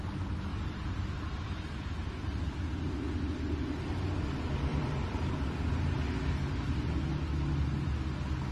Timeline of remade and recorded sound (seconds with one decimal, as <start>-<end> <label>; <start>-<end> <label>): 0.0-0.5 recorded; 0.5-2.4 remade; 2.4-4.7 recorded; 4.7-5.3 remade; 5.3-8.5 recorded